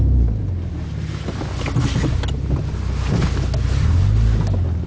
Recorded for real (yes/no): yes